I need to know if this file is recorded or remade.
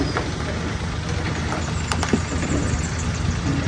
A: recorded